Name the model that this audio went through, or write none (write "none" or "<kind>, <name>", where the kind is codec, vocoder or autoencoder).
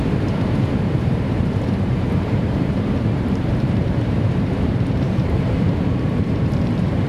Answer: vocoder, BigVGAN v2